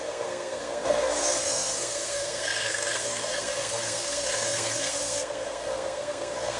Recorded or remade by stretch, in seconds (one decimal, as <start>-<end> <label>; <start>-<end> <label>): 0.0-6.6 remade